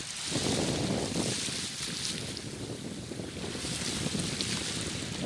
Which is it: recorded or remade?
recorded